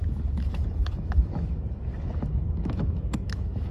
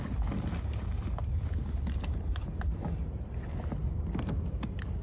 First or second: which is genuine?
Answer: second